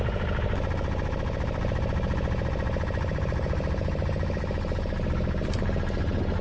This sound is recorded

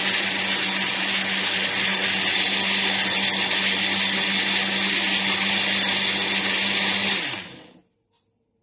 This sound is recorded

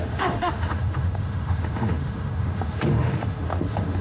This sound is remade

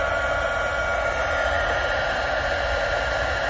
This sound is recorded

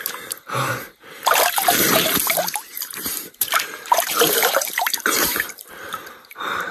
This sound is remade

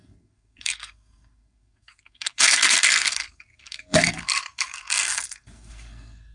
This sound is remade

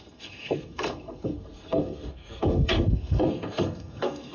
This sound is remade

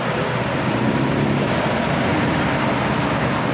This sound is recorded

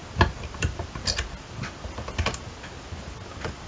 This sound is recorded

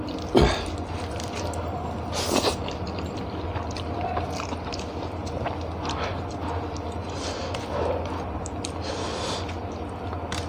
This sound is remade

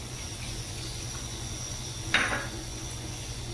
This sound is remade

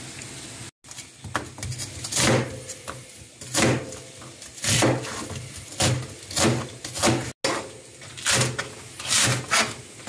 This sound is recorded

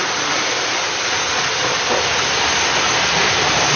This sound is recorded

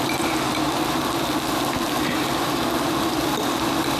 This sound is recorded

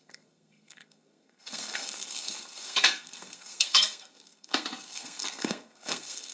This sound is remade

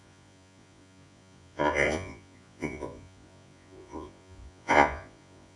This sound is remade